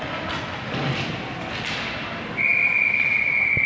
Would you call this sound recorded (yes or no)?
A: yes